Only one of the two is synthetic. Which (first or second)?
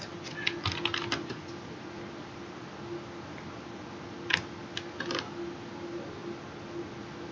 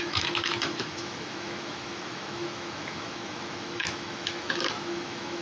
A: second